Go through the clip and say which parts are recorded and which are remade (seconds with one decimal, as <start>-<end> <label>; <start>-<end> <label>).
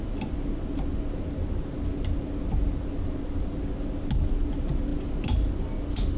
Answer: 0.0-6.2 recorded